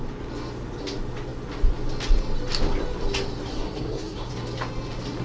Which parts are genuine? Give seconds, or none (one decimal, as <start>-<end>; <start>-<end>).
0.0-3.5; 4.3-5.2